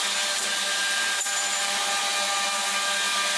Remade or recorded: recorded